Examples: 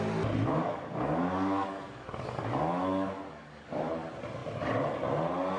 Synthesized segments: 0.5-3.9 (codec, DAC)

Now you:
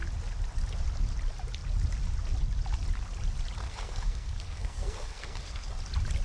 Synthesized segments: 3.6-5.8 (codec, SNAC)